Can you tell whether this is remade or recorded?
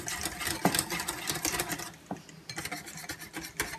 recorded